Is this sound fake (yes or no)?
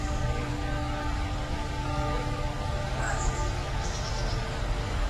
yes